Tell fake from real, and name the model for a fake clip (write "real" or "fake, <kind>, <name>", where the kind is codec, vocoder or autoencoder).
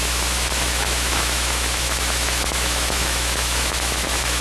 fake, autoencoder, DAC-VAE